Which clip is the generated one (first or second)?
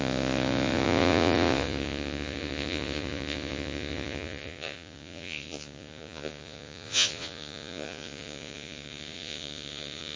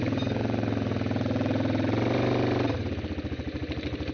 first